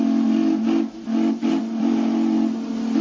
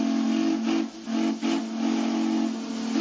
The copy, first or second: first